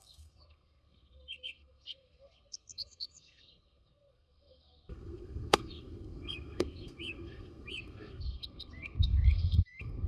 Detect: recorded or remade remade